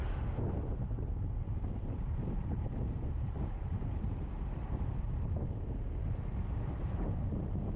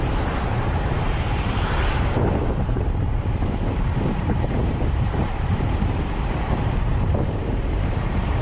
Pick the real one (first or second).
first